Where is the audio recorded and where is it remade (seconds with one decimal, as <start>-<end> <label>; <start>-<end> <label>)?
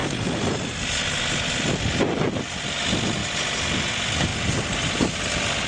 0.0-5.7 recorded